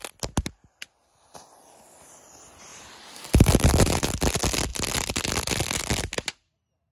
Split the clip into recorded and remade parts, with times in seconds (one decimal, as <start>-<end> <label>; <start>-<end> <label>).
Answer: 0.0-2.7 recorded; 2.7-4.1 remade; 4.1-6.9 recorded